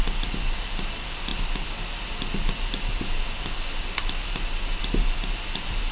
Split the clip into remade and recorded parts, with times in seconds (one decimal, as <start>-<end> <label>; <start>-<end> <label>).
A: 0.0-5.9 recorded